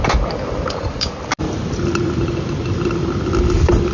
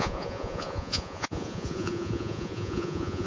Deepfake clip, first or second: second